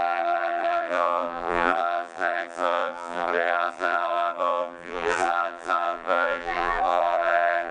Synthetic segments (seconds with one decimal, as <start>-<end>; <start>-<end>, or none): 0.0-7.7